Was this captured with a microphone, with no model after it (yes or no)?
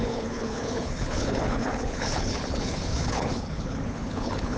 no